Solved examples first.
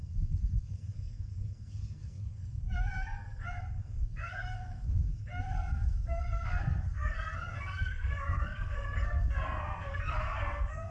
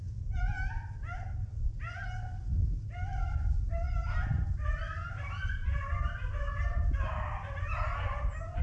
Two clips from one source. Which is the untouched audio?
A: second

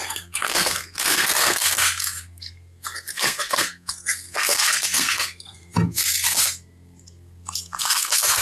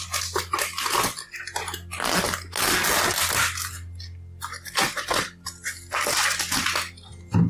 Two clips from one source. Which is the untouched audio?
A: second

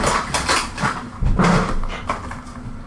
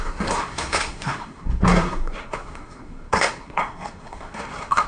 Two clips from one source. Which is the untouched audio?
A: first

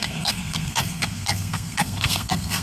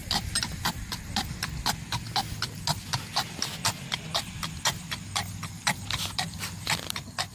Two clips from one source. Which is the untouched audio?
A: second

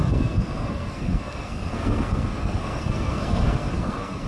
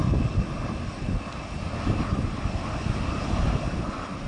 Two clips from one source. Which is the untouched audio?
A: second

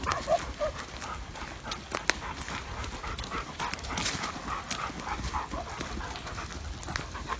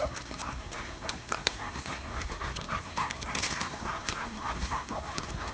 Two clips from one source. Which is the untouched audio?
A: first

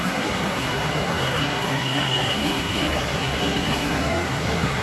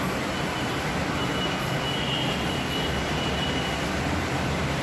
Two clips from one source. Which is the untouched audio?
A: second